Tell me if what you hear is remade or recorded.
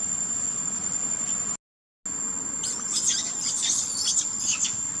recorded